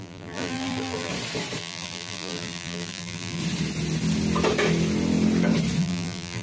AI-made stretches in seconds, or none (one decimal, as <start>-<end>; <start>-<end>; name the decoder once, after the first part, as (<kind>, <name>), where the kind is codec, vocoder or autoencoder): 0.0-1.1 (vocoder, BigVGAN v2); 1.6-3.4; 5.8-6.4